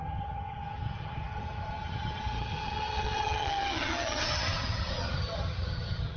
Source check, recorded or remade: remade